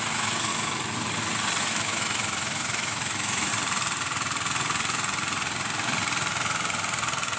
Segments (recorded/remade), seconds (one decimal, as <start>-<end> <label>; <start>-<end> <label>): 0.0-0.5 remade; 0.5-1.6 recorded; 1.6-3.5 remade; 3.5-7.4 recorded